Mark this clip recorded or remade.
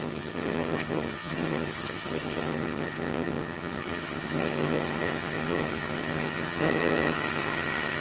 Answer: remade